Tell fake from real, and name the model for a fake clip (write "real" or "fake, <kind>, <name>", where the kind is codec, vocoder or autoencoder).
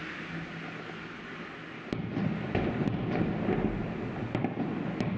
real